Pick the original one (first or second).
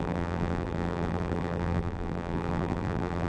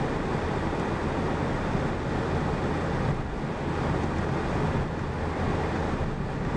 second